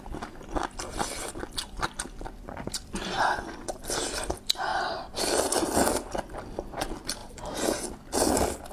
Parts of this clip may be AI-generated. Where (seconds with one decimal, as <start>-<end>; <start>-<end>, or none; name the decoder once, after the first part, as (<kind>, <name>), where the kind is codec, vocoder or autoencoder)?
4.7-5.2 (vocoder, BigVGAN v2)